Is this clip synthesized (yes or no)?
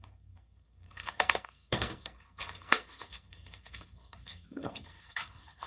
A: yes